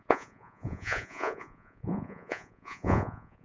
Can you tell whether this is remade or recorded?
remade